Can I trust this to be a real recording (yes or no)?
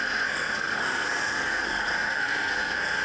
no